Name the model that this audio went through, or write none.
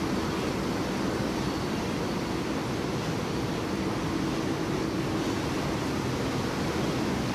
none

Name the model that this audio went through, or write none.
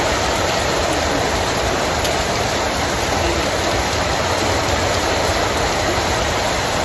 vocoder, BigVGAN v2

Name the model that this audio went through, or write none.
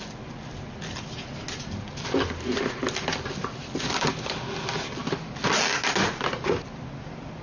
none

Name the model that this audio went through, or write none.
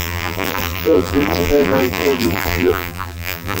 vocoder, BigVGAN v2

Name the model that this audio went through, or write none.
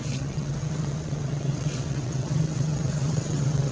vocoder, WaveNeXt